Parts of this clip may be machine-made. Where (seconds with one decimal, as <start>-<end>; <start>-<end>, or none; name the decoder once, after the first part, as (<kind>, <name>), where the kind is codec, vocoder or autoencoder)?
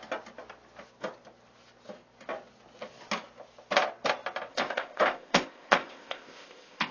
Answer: 4.5-6.9 (codec, ZipCodec)